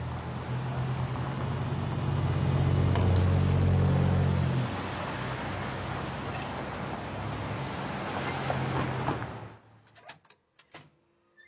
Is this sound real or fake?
real